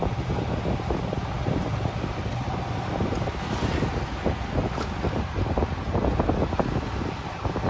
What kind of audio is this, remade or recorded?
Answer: recorded